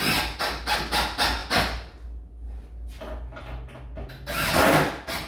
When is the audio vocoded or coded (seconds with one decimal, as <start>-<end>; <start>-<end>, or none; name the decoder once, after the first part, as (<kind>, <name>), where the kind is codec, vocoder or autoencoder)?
none